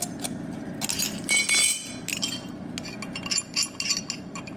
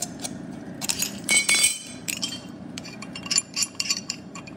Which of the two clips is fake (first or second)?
second